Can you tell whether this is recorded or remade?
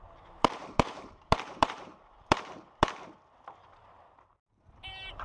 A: remade